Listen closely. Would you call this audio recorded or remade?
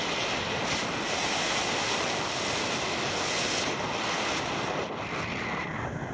recorded